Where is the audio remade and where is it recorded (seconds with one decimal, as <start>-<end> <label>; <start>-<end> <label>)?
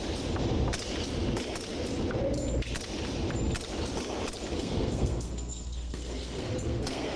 0.0-4.5 recorded; 4.5-7.2 remade